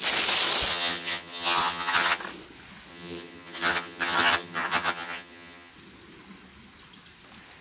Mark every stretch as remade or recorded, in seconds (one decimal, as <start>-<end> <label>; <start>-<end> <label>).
0.0-0.7 recorded; 0.7-2.2 remade; 2.2-2.9 recorded; 2.9-5.7 remade; 5.7-7.6 recorded